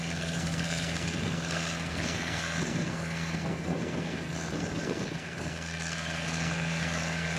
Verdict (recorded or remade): remade